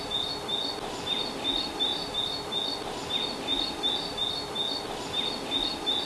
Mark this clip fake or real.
real